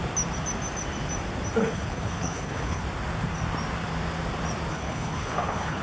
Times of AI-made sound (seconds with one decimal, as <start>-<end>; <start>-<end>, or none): 1.6-2.8; 4.7-5.8